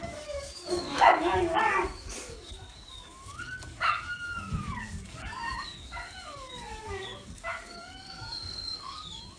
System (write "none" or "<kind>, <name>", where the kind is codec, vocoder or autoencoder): codec, DAC